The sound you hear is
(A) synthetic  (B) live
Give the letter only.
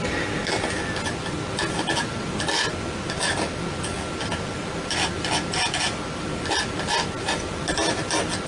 B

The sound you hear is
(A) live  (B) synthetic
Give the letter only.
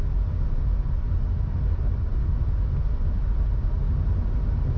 A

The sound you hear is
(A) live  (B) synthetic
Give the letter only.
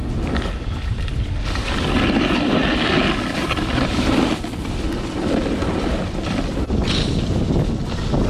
A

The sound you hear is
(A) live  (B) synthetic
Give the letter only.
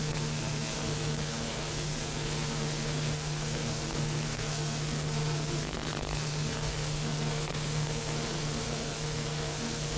B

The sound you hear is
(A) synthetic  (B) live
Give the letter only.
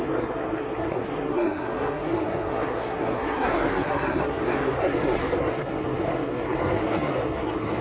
A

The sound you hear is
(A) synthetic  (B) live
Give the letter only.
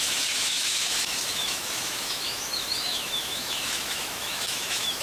A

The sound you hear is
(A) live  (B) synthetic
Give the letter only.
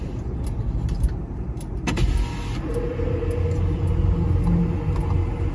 A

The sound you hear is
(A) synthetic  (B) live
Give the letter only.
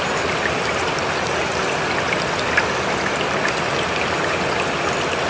B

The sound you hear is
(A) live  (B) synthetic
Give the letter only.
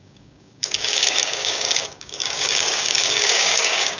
B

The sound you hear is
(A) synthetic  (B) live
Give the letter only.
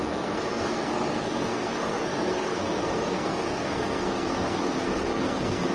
A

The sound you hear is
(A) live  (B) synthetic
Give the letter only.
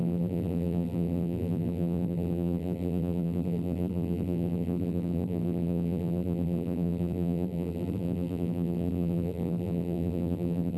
B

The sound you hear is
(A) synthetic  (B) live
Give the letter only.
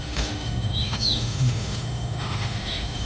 A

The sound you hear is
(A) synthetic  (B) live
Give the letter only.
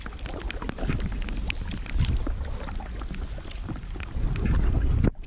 B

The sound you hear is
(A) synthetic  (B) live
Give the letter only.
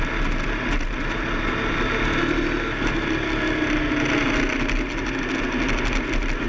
B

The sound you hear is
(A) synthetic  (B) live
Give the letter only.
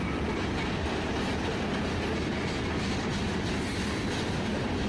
B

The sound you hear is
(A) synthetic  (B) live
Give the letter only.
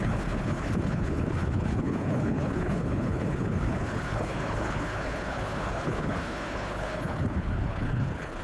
A